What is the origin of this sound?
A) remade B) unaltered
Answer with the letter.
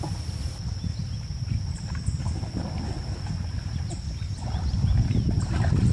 B